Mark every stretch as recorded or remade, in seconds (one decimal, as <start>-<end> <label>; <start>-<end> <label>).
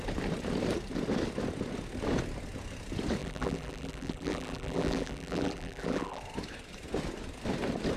0.0-3.2 recorded; 3.2-6.2 remade; 6.2-8.0 recorded